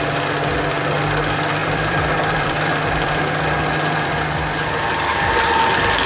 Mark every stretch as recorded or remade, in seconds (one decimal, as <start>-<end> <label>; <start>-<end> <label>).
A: 0.0-1.6 recorded; 1.6-5.3 remade; 5.3-6.1 recorded